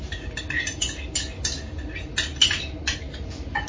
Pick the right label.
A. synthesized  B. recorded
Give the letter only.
B